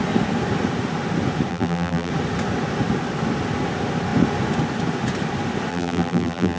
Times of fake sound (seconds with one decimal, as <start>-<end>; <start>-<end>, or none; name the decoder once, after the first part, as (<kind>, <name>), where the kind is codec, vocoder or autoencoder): 1.5-2.1 (vocoder, BigVGAN v2); 5.7-6.6